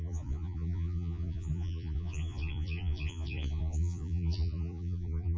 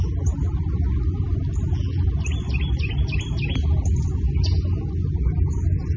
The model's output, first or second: first